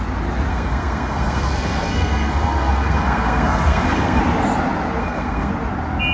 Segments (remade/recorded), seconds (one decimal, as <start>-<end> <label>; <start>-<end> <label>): 0.0-0.5 recorded; 0.5-4.2 remade; 4.2-5.0 recorded; 5.0-5.5 remade; 5.5-6.1 recorded